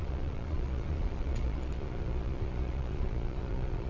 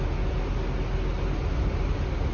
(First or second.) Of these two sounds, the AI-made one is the first